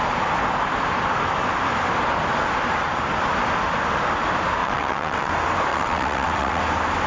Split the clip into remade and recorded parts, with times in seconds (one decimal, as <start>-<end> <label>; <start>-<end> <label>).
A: 0.0-4.6 recorded; 4.6-5.3 remade; 5.3-5.7 recorded; 5.7-6.6 remade; 6.6-7.1 recorded